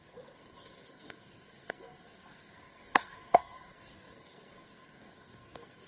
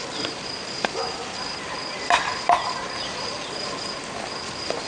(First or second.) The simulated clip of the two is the first